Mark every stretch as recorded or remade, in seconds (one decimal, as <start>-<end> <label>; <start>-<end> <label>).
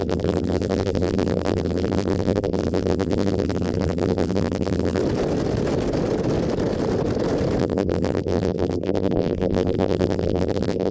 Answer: 0.0-5.0 remade; 5.0-7.6 recorded; 7.6-10.9 remade